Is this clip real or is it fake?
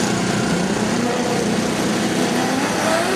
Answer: real